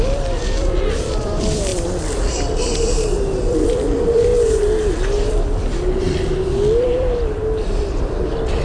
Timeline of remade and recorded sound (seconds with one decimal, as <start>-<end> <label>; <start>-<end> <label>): 0.0-1.7 remade; 1.7-3.5 recorded; 3.5-4.3 remade; 4.3-6.0 recorded; 6.0-7.4 remade; 7.4-8.6 recorded